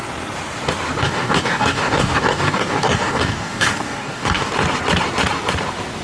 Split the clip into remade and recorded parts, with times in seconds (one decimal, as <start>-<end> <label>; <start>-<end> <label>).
0.0-1.0 recorded; 1.0-4.5 remade; 4.5-6.0 recorded